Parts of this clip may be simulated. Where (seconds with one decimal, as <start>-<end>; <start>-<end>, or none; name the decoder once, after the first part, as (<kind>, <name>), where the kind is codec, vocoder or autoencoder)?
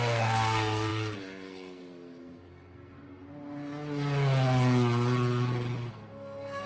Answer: 0.0-3.2 (codec, SNAC); 5.9-6.7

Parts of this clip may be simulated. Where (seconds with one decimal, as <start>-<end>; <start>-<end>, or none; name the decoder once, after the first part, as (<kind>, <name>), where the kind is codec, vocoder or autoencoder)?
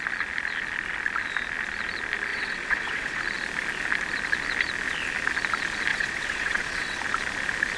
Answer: 2.3-3.2 (vocoder, WaveNeXt); 5.9-7.0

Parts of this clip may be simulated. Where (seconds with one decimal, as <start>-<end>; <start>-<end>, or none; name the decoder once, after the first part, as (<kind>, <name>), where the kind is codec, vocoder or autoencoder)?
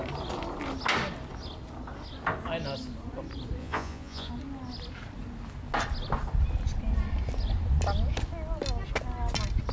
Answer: 3.6-4.3 (vocoder, Vocos)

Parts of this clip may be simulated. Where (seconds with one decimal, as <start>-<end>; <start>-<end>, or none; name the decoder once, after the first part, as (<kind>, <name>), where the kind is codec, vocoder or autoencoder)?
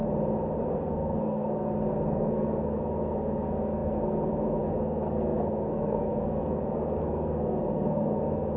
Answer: 0.6-8.6 (codec, SNAC)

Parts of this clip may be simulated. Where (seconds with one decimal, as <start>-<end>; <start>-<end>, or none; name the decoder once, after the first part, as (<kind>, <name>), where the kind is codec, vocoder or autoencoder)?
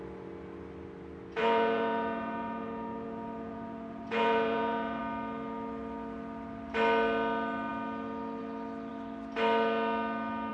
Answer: 1.4-5.0 (vocoder, Vocos)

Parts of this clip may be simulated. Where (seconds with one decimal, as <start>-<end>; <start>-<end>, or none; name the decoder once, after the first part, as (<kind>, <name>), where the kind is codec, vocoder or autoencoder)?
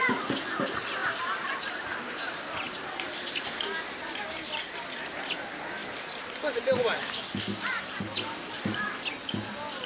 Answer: none